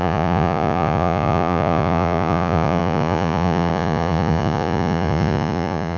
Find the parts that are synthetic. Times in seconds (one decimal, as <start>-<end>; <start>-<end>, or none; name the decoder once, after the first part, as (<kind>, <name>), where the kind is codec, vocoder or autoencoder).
0.0-6.0 (vocoder, Vocos)